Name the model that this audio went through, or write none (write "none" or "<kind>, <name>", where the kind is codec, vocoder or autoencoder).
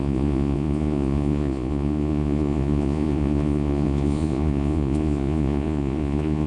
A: vocoder, Vocos